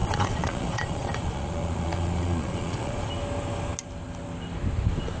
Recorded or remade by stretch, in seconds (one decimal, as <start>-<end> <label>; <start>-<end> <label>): 0.0-3.1 remade; 3.1-5.2 recorded